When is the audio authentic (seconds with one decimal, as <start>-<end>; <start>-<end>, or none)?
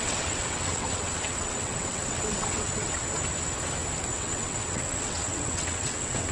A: 3.0-4.1